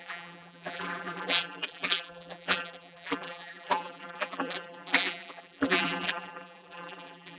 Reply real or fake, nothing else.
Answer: fake